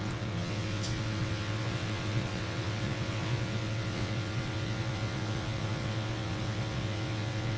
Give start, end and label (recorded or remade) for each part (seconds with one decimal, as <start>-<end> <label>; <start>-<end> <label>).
0.0-7.6 remade